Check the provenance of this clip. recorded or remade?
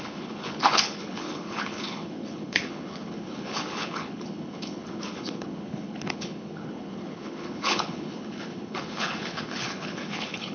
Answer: remade